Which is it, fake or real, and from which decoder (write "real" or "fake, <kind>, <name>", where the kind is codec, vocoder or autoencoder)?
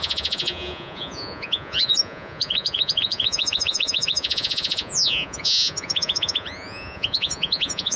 fake, vocoder, Vocos